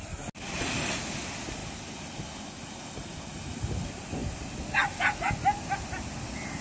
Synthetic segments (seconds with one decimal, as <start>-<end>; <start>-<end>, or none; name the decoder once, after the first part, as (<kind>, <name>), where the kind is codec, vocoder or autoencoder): none